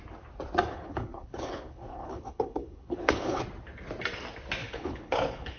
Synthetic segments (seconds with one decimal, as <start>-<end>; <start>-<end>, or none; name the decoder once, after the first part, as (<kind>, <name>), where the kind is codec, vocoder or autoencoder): 0.7-3.4 (codec, HILCodec); 4.6-5.6